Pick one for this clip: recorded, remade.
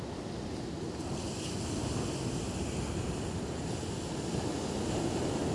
recorded